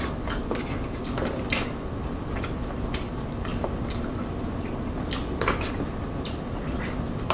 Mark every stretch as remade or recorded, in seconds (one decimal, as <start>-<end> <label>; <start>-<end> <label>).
0.0-7.3 recorded